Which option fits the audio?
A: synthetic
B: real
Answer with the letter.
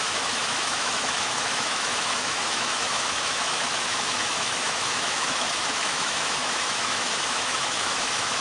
A